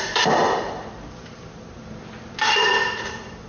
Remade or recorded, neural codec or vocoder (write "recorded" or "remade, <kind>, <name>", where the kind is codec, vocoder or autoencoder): remade, vocoder, BigVGAN v2